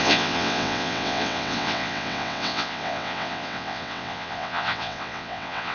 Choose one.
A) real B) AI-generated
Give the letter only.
B